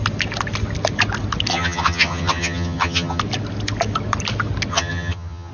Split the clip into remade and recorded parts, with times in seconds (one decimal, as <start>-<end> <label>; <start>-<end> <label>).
0.0-1.5 recorded; 1.5-3.2 remade; 3.2-4.7 recorded; 4.7-5.5 remade